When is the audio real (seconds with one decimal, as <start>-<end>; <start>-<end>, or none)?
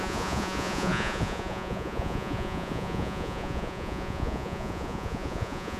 none